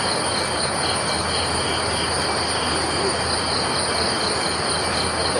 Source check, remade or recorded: recorded